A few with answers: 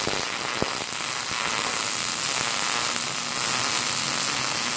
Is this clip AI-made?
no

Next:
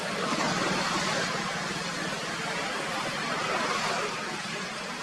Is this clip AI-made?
no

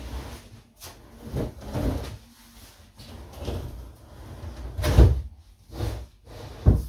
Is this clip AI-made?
no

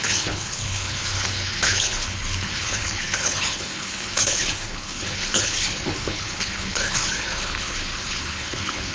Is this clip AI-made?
yes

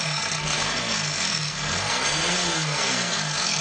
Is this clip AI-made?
yes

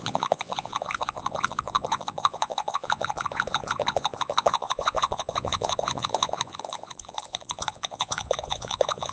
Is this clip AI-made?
yes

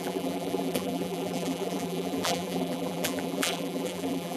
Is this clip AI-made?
yes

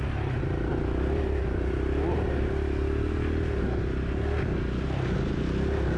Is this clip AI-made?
no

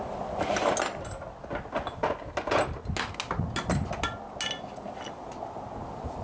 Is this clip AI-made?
no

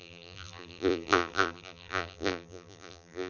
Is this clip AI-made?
yes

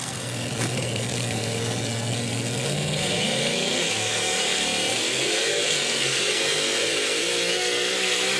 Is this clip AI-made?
yes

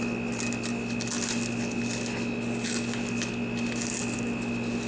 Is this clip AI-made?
no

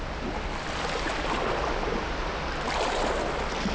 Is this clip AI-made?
no